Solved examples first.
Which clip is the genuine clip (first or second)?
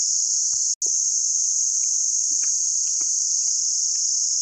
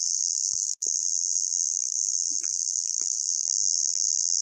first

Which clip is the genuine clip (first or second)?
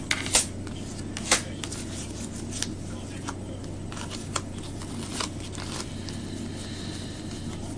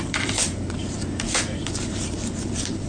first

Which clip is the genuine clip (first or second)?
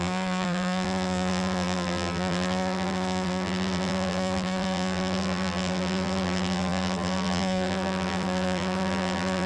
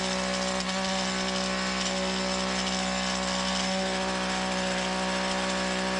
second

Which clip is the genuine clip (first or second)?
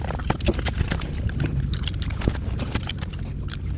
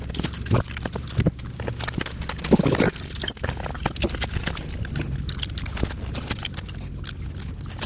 second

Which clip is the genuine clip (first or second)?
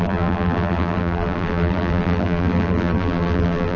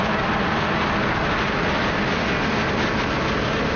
second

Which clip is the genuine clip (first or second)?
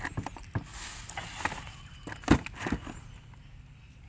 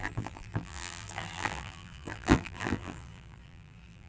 first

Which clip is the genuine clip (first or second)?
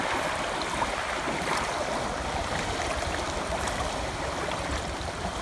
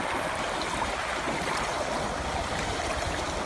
second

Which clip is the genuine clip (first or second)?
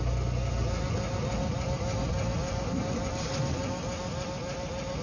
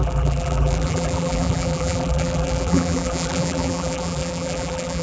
first